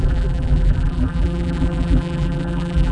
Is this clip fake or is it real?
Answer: fake